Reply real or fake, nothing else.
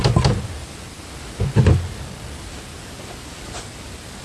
real